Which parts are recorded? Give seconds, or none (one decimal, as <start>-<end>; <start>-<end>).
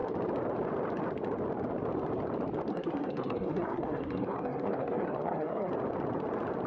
0.0-2.7; 5.7-6.7